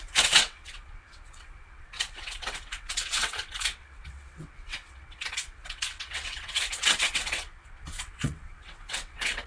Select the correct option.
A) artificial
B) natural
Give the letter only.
A